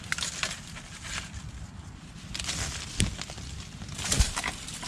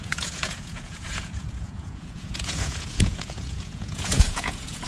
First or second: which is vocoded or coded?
second